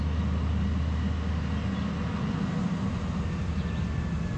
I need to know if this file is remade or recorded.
recorded